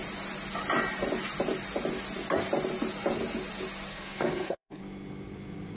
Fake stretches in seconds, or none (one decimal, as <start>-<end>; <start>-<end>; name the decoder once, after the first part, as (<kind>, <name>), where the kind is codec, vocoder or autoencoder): 3.9-4.8 (codec, SNAC)